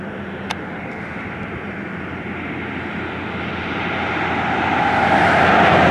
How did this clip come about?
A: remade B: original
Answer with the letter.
B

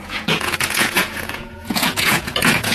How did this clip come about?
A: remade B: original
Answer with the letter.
A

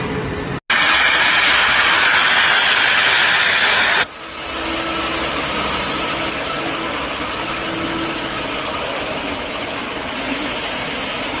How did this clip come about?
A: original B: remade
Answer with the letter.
A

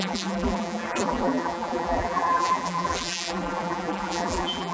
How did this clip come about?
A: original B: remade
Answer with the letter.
B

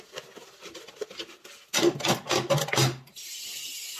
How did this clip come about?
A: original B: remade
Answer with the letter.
A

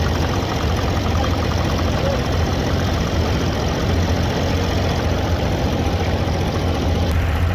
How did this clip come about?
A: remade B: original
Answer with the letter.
A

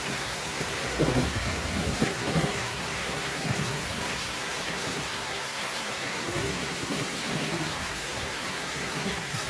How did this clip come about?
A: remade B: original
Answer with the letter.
A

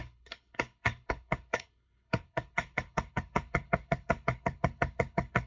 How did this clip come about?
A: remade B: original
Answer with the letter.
A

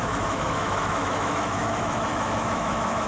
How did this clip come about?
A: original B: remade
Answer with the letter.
B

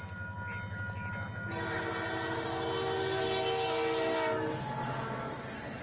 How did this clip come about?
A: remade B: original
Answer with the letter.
B